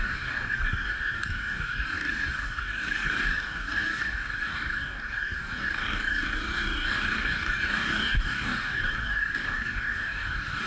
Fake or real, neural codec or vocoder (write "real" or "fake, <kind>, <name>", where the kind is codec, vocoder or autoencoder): fake, codec, DAC